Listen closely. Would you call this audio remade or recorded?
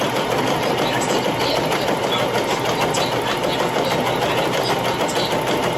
recorded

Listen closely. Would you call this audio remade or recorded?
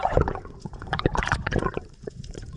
remade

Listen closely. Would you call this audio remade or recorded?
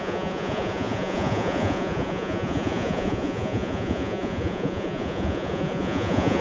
remade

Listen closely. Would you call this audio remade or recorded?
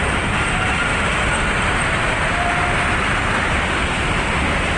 remade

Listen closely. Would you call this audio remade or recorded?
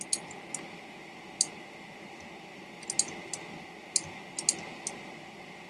recorded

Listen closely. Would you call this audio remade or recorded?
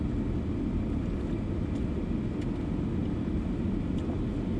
recorded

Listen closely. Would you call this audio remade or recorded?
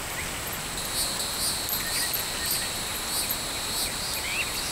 recorded